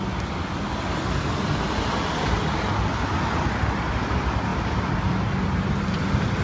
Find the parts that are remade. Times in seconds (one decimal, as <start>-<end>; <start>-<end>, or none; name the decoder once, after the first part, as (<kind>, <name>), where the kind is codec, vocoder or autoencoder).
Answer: none